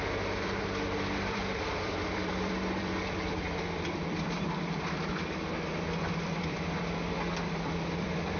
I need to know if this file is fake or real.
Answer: fake